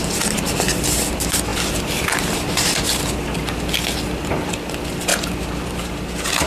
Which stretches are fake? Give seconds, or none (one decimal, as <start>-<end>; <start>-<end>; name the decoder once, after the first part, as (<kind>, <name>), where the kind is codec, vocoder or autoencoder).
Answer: none

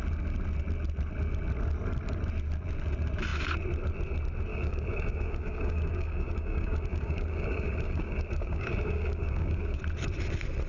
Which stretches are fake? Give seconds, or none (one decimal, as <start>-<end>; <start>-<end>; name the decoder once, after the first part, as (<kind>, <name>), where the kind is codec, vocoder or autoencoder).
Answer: 4.5-9.8 (codec, DAC)

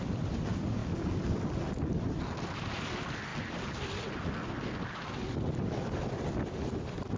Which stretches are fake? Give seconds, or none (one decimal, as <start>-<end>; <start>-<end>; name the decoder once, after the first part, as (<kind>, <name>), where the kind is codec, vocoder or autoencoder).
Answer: none

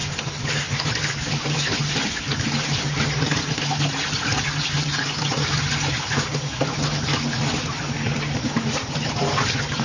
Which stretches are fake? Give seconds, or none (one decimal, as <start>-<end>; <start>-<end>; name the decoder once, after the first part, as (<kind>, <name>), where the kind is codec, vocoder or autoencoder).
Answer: none